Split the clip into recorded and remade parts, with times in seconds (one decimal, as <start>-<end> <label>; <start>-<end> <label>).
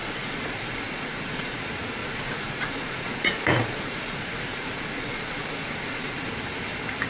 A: 0.0-1.6 remade; 1.6-2.0 recorded; 2.0-6.3 remade; 6.3-7.1 recorded